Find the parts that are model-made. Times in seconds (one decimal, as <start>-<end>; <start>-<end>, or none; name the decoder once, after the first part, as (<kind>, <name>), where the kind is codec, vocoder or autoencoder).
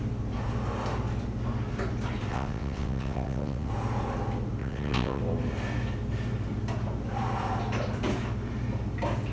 2.3-3.7 (vocoder, WaveNeXt); 4.6-5.2